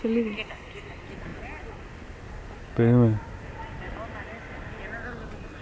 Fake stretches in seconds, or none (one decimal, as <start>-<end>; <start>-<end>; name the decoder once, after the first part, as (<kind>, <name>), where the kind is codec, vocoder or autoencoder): none